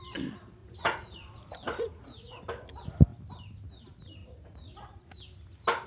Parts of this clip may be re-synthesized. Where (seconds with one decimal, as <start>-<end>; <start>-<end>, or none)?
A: 0.6-2.4; 4.2-5.2

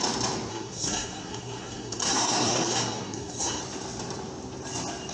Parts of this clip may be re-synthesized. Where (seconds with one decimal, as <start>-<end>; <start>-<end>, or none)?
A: 0.5-3.6

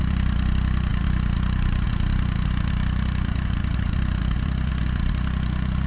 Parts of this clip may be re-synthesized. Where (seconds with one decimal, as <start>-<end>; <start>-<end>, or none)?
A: 3.7-4.4

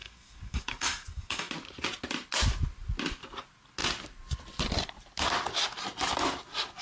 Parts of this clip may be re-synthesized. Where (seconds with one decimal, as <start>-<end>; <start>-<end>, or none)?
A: 0.0-1.5

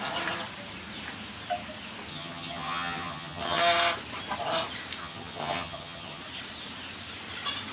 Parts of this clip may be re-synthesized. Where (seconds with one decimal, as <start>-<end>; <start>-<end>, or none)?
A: 2.1-3.6; 5.0-6.2

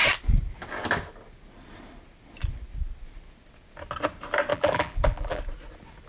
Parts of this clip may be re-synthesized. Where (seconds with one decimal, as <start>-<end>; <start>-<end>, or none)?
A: 4.5-5.4

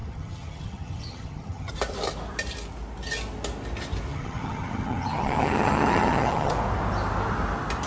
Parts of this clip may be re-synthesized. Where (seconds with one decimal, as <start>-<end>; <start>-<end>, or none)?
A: 0.0-1.7; 4.1-6.5

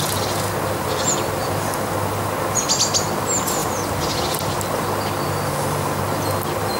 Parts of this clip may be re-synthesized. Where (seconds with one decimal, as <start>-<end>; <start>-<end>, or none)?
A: none